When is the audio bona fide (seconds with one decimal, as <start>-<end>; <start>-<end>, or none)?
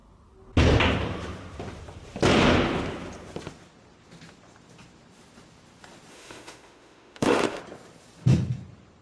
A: 0.0-6.1; 7.6-9.0